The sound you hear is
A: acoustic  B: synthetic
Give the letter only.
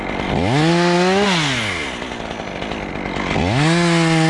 A